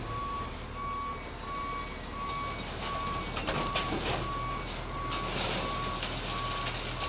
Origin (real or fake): real